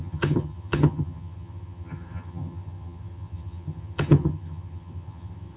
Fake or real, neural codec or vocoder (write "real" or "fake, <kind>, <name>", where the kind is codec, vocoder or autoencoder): fake, vocoder, HiFi-GAN